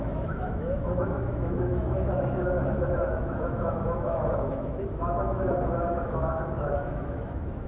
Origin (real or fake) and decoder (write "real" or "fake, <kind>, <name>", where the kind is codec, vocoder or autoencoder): fake, autoencoder, DAC-VAE